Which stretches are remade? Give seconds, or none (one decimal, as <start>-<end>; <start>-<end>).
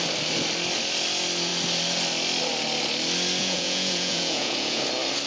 3.4-4.8